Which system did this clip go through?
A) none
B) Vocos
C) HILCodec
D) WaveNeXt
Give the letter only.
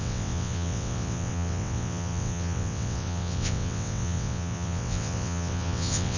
D